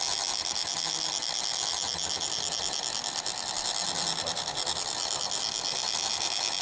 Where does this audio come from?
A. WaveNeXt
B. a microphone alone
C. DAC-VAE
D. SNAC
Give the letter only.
B